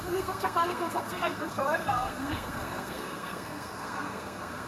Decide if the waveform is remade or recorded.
remade